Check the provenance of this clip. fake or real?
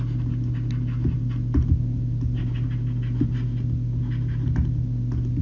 real